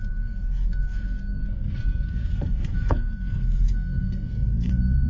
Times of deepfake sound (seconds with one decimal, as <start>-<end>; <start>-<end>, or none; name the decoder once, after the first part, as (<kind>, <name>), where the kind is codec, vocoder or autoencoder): 0.0-5.1 (codec, SNAC)